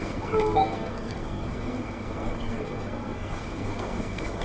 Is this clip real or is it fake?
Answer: fake